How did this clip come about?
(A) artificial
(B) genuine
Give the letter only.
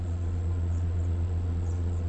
A